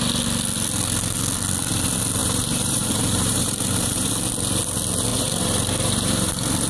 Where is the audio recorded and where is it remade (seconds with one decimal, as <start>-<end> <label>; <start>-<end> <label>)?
0.0-2.2 recorded; 2.2-4.1 remade; 4.1-5.1 recorded; 5.1-6.3 remade; 6.3-6.7 recorded